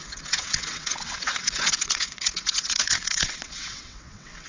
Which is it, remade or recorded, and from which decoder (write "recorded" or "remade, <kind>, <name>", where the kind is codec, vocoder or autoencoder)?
remade, vocoder, WaveNeXt